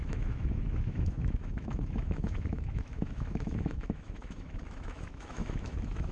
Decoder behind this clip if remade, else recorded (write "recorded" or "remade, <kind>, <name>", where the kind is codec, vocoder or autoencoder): remade, autoencoder, DAC-VAE